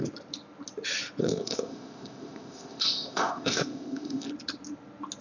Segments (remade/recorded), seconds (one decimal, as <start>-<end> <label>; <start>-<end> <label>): 0.0-1.2 recorded; 1.2-4.3 remade; 4.3-5.2 recorded